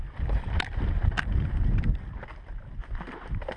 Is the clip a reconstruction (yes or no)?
no